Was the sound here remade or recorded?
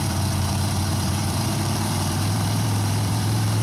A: remade